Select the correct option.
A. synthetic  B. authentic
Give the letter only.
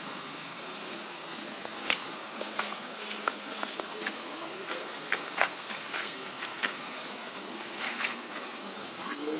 A